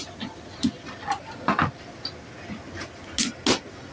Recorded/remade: recorded